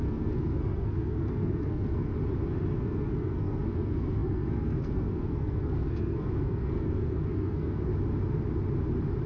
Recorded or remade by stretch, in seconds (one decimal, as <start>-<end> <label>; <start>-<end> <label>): 0.0-2.1 remade; 2.1-2.8 recorded; 2.8-7.9 remade; 7.9-9.3 recorded